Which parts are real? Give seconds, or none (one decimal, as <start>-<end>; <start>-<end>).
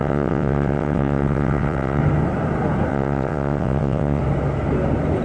2.0-2.9; 4.2-5.2